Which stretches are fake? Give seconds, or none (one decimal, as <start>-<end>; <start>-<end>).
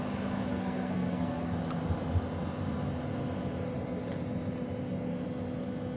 0.5-1.5